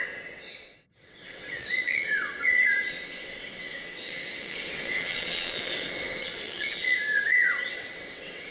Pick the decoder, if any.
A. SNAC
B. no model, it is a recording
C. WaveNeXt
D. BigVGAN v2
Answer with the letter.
C